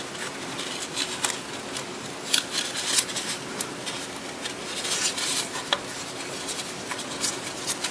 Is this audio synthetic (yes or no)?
no